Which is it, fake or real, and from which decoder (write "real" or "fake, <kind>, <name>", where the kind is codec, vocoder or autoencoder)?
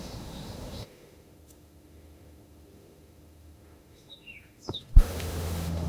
fake, autoencoder, DAC-VAE